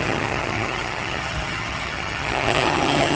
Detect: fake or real fake